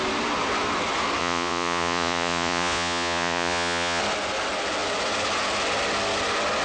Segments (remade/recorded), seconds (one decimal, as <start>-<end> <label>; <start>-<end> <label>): 0.0-1.2 recorded; 1.2-4.0 remade; 4.0-6.6 recorded